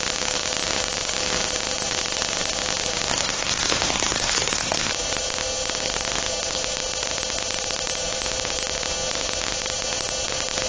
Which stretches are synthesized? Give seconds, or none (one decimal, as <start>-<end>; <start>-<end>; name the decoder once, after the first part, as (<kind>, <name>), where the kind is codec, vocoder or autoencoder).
3.1-4.9 (codec, SNAC)